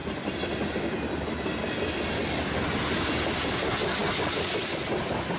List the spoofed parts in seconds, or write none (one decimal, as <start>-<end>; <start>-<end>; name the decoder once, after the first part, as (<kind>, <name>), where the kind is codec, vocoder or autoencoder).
none